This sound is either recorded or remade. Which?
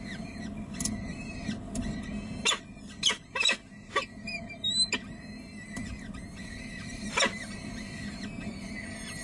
recorded